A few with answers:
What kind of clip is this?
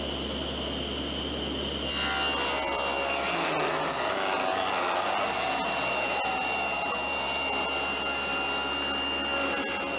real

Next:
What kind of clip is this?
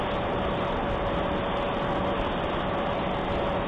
real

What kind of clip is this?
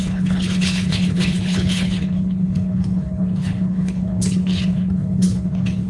fake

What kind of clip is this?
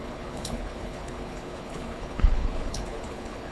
fake